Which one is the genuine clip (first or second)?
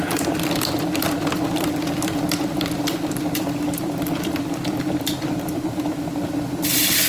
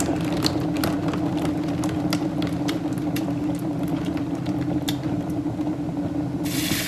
second